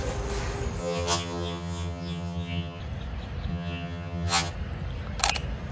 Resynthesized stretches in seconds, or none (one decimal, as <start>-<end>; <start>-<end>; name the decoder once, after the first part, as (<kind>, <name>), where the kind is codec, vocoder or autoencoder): 0.8-2.8 (vocoder, HiFi-GAN); 3.5-4.5